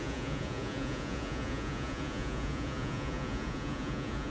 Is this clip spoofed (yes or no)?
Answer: yes